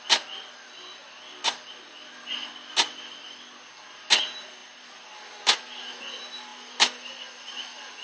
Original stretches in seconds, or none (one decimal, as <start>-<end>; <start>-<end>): 0.0-8.0